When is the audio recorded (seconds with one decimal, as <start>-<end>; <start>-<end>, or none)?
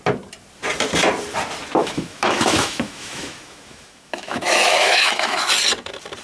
0.0-1.8; 5.5-6.2